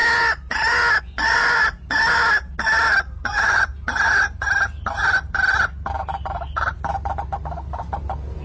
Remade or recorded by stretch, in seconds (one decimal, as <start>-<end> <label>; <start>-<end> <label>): 0.0-1.0 recorded; 1.0-1.6 remade; 1.6-3.3 recorded; 3.3-3.7 remade; 3.7-8.4 recorded